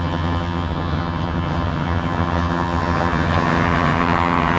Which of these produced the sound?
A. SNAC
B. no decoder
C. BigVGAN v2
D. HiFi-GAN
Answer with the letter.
D